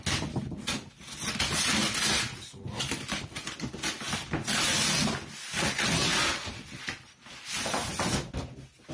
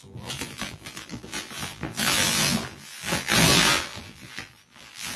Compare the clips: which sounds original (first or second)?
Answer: first